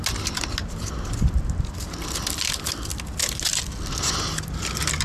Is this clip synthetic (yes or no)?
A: no